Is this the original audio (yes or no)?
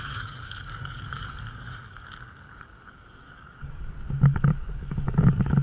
no